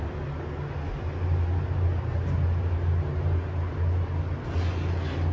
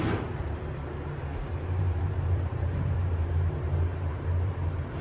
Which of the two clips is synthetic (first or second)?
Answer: second